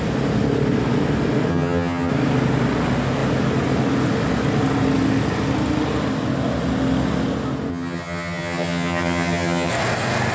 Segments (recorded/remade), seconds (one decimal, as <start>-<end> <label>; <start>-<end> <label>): 0.0-1.5 recorded; 1.5-2.1 remade; 2.1-7.7 recorded; 7.7-9.7 remade; 9.7-10.3 recorded

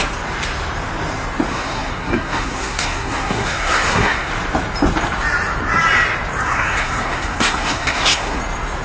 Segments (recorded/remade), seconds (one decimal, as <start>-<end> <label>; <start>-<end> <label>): 0.0-1.5 recorded; 1.5-4.3 remade; 4.3-6.4 recorded; 6.4-8.4 remade; 8.4-8.8 recorded